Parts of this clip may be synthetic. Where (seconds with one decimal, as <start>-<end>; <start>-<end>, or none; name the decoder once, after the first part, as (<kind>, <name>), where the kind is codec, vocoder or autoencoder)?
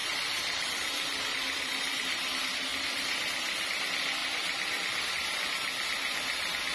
0.0-2.3 (vocoder, BigVGAN v2)